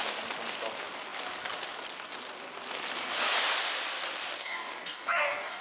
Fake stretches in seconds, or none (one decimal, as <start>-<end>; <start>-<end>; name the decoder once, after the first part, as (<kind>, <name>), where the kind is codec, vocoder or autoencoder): 4.4-5.6 (codec, DAC)